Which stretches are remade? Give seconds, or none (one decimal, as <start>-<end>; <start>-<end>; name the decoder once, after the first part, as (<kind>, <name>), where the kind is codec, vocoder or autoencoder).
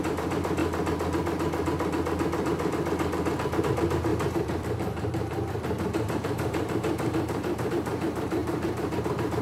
0.0-0.6 (vocoder, BigVGAN v2); 3.6-9.4